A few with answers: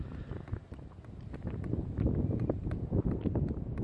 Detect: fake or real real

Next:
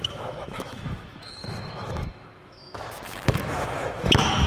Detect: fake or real fake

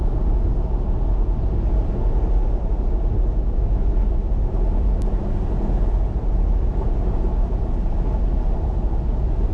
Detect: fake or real real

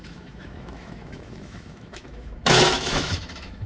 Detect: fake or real fake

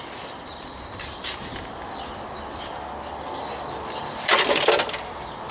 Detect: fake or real real